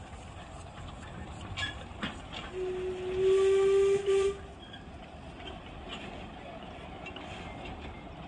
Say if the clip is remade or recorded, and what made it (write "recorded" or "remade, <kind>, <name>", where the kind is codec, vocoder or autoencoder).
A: recorded